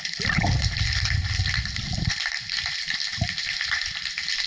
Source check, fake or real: real